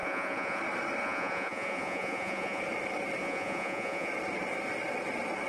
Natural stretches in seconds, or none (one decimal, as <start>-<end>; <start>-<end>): 0.6-1.0; 2.6-3.2; 4.1-5.5